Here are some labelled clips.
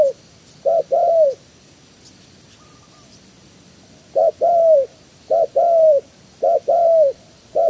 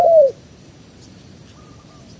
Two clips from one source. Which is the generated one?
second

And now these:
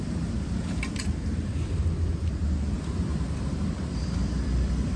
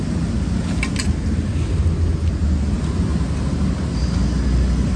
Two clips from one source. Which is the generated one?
first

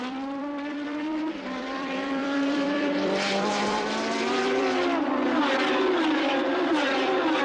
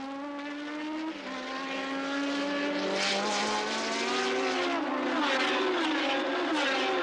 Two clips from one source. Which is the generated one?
first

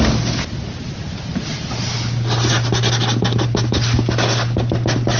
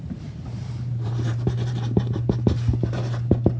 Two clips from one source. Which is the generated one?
second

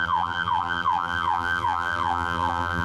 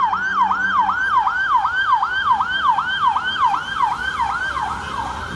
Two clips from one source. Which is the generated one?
first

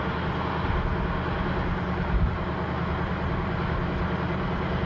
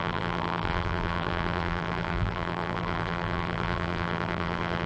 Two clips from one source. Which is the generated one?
second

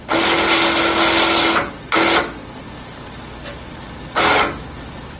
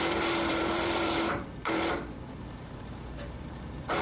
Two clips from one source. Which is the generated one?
second